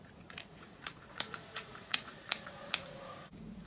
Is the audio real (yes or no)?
no